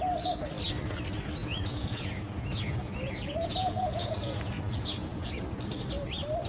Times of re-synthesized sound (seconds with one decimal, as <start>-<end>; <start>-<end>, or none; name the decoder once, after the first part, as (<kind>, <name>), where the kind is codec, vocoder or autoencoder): 1.4-5.3 (vocoder, Vocos)